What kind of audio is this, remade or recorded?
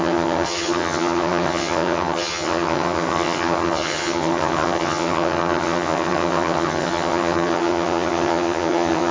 remade